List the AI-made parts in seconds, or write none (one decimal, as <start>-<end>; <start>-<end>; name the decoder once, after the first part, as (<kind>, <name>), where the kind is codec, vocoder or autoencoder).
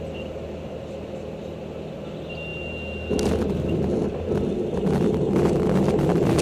none